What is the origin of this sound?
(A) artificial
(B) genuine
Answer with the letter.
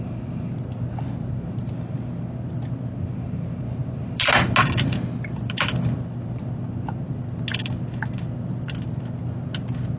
B